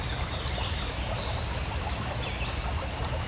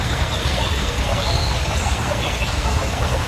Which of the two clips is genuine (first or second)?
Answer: first